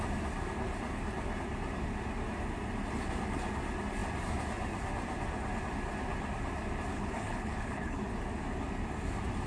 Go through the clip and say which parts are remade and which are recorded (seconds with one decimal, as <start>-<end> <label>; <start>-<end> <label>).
0.0-6.9 recorded; 6.9-8.0 remade; 8.0-9.5 recorded